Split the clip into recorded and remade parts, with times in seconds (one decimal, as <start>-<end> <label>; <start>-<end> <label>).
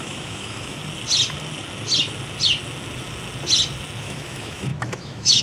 0.0-0.8 remade; 0.8-4.0 recorded; 4.0-5.4 remade